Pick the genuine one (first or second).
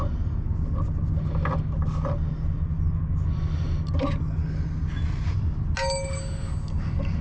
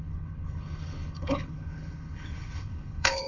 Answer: first